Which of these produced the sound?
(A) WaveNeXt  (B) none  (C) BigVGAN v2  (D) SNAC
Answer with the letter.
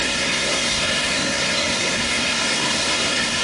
D